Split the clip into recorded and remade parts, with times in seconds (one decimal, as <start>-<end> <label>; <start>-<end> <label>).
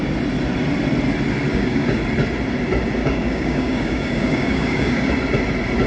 0.0-1.5 recorded; 1.5-2.0 remade; 2.0-3.0 recorded; 3.0-5.1 remade; 5.1-5.9 recorded